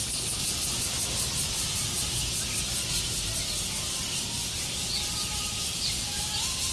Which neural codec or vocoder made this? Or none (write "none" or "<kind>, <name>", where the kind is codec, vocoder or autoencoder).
none